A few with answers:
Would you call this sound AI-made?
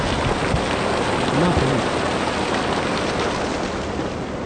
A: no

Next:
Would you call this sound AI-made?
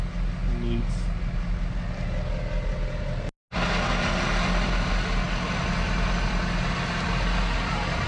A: no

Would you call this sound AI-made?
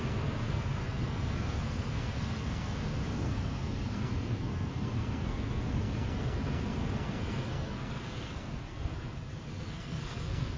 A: yes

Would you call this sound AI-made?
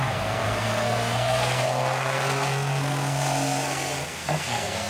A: yes